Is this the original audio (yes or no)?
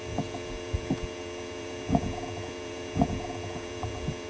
no